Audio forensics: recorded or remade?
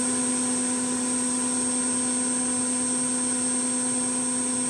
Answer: recorded